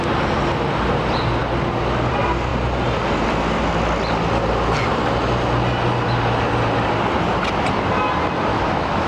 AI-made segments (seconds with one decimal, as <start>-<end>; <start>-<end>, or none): 8.5-9.1